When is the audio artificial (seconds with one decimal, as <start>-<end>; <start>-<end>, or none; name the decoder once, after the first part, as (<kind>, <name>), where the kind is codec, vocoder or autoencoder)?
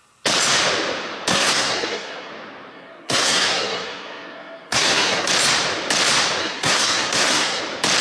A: 1.3-2.3 (codec, SNAC); 2.7-5.3; 6.4-7.6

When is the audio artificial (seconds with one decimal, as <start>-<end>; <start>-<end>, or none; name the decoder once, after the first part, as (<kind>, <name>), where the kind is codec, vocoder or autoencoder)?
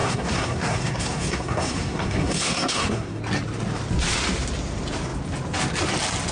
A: 0.0-3.2 (codec, SNAC)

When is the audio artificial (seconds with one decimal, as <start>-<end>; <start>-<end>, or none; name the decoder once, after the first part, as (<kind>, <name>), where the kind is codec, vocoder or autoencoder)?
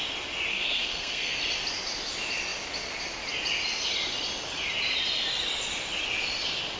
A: 0.5-1.4 (codec, SNAC)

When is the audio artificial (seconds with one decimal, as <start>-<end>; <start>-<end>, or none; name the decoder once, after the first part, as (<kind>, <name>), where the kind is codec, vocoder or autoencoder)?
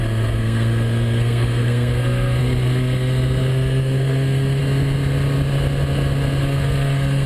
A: 0.0-4.6 (codec, SNAC); 6.4-7.3